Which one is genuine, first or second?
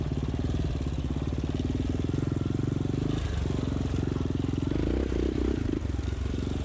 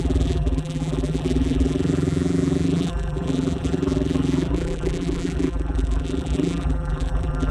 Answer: first